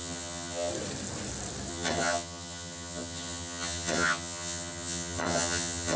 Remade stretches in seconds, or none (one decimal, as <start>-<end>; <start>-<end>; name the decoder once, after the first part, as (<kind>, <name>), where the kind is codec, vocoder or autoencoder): 0.0-0.7 (vocoder, HiFi-GAN); 1.7-6.0